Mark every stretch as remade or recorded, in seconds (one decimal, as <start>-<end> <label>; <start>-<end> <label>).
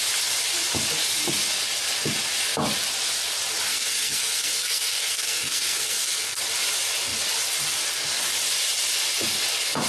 0.0-3.7 recorded; 3.7-6.4 remade; 6.4-9.9 recorded